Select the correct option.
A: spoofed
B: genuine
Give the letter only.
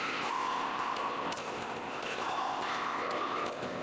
A